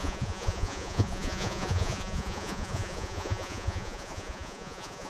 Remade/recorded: remade